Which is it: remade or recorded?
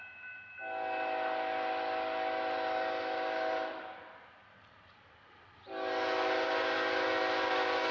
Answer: recorded